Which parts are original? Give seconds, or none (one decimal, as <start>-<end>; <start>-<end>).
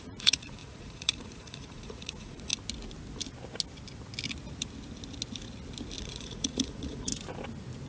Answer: 2.5-6.0; 7.1-7.9